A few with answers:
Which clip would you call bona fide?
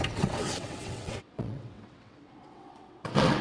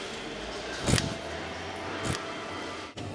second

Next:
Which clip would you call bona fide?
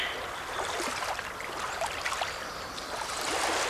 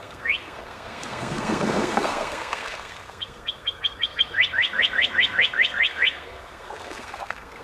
first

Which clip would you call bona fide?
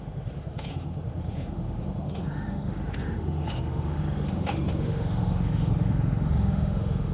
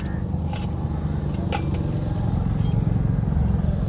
second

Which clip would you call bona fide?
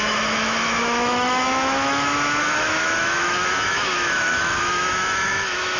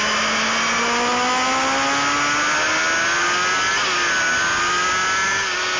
second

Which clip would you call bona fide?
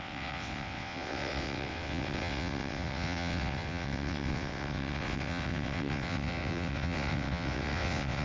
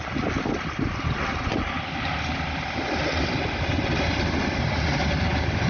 second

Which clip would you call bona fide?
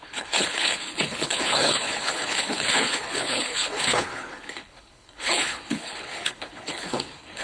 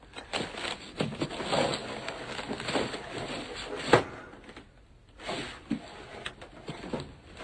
second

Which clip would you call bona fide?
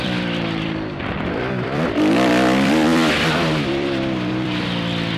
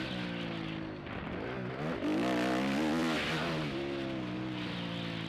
second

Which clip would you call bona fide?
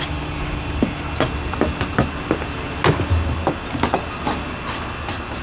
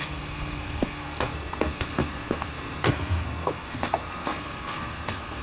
first